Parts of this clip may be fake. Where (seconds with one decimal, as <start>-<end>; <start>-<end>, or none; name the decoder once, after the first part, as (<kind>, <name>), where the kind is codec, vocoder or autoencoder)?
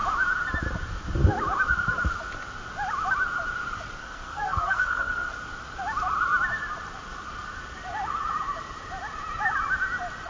4.0-5.3 (codec, SNAC)